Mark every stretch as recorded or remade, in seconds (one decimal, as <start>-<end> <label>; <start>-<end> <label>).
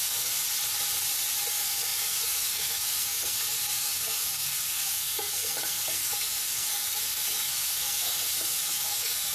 0.0-0.4 remade; 0.4-1.5 recorded; 1.5-9.3 remade